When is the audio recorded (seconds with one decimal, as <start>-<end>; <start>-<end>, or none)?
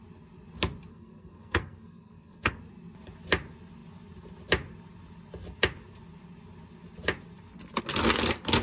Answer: 0.0-0.9; 2.6-8.6